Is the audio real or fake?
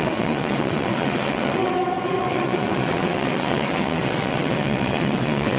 fake